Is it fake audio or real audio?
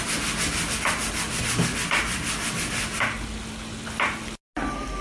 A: real